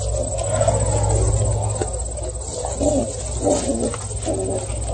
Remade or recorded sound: recorded